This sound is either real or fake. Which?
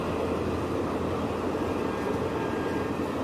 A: real